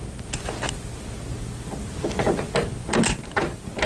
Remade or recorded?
recorded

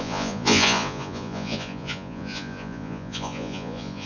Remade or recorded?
remade